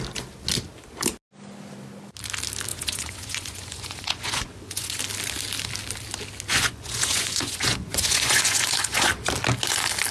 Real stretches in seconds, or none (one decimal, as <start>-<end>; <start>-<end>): 0.0-2.7; 5.0-6.5; 9.1-10.1

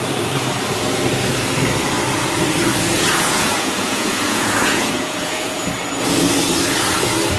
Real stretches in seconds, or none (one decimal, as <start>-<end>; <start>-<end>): 0.0-2.9; 5.6-7.4